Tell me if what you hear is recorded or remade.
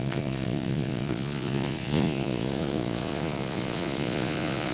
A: remade